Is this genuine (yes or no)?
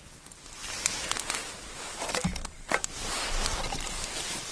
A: yes